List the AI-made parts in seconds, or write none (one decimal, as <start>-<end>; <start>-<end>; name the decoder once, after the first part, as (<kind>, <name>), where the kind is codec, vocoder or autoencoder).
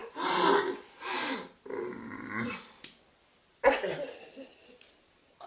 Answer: none